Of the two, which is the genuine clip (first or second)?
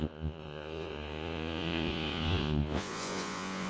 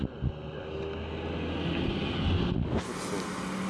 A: second